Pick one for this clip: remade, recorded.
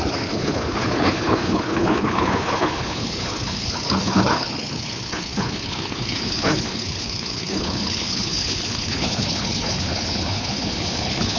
remade